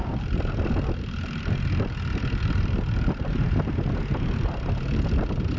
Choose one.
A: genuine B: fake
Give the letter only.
A